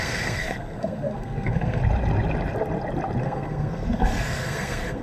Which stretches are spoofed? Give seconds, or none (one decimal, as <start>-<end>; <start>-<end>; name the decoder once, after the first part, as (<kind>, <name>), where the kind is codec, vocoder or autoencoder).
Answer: 0.0-1.8 (codec, SNAC); 3.2-5.0